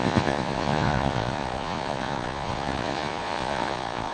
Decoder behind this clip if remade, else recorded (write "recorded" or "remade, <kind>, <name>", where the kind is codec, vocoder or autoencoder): remade, vocoder, Vocos